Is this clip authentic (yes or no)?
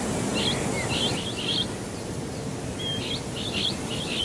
yes